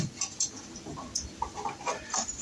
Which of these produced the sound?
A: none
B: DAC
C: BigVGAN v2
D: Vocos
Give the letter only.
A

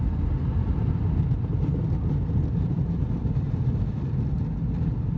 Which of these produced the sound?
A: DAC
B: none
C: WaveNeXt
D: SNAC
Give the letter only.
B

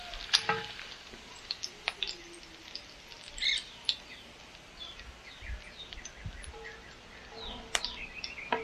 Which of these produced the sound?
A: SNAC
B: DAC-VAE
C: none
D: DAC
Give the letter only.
C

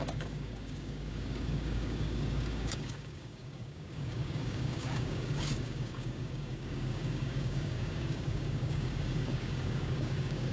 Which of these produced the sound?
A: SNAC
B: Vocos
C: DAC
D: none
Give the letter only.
C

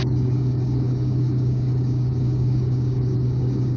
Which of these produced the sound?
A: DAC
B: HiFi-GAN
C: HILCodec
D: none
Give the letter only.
A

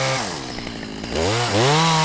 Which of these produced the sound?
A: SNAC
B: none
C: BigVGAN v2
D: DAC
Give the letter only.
B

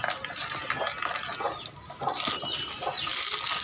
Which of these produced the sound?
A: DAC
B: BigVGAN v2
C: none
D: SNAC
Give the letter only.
C